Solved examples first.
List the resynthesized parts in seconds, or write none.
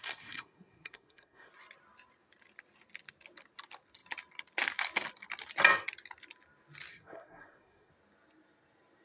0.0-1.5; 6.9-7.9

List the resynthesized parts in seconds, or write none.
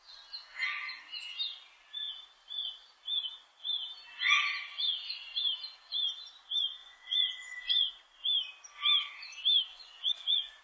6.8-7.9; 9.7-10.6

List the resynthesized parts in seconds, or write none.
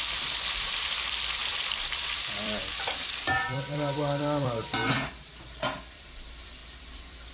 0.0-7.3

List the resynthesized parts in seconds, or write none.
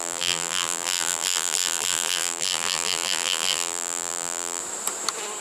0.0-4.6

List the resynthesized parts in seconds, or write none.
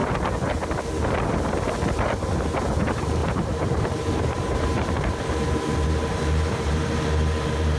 3.2-7.8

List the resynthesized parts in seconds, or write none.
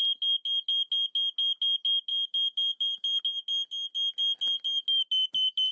2.1-3.2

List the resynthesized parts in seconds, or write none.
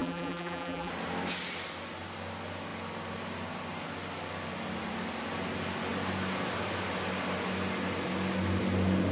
0.0-0.9